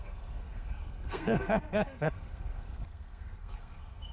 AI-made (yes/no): yes